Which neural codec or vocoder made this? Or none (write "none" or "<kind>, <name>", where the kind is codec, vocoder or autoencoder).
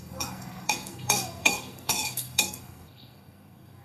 codec, SNAC